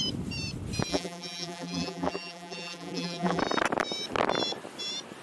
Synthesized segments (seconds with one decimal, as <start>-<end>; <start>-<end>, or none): 0.9-3.4